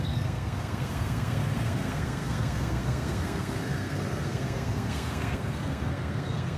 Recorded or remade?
remade